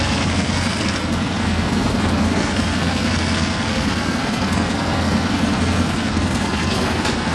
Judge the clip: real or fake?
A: fake